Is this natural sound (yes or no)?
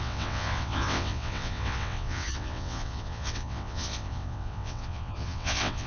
no